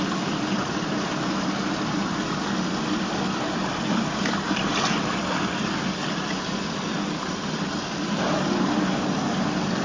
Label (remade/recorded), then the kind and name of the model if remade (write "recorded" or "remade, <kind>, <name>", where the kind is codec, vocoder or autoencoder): recorded